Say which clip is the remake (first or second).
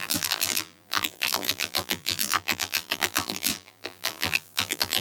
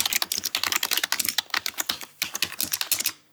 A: first